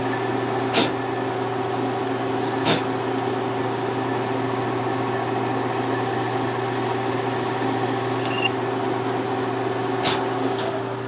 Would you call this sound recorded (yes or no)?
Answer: yes